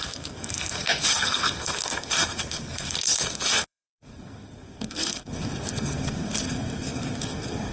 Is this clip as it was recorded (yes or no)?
no